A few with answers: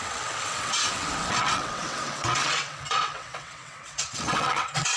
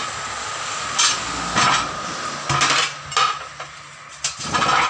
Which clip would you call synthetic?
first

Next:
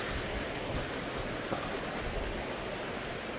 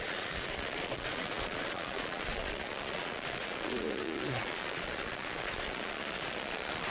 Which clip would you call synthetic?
second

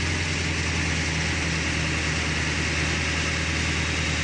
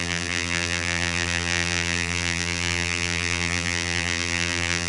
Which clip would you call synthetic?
second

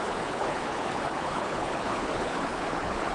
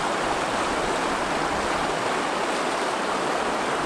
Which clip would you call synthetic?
first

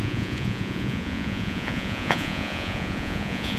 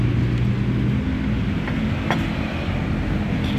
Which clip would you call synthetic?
first